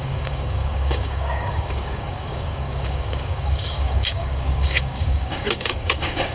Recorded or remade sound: remade